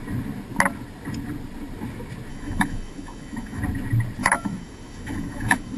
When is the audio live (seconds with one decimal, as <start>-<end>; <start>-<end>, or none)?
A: 0.0-2.3; 3.6-4.2